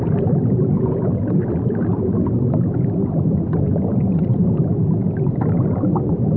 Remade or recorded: recorded